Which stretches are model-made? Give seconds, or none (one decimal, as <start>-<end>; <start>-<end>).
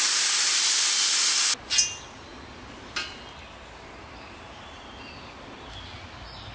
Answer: none